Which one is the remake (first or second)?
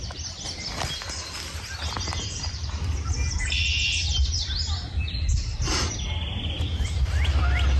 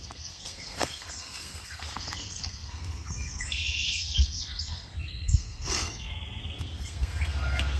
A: second